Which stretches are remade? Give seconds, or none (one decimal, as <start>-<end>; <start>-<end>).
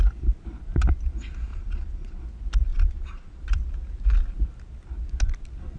1.5-2.2; 2.7-3.4